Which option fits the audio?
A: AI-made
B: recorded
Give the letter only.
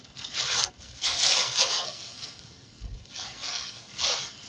A